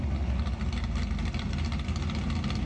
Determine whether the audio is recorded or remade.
recorded